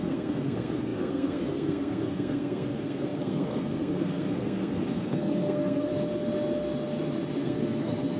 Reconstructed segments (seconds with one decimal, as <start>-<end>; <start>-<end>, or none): 0.0-5.9; 7.4-8.2